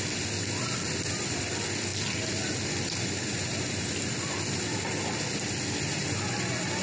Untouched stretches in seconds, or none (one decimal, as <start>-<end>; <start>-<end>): 0.0-6.8